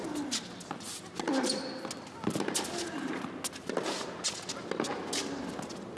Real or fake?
real